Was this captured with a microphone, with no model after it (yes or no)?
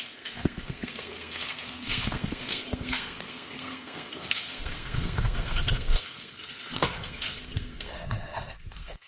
no